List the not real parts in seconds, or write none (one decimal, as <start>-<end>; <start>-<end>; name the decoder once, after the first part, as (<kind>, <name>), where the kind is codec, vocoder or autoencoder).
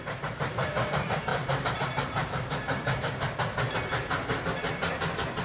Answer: 0.0-2.2 (vocoder, BigVGAN v2)